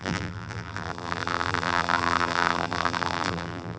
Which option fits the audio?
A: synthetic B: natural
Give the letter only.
A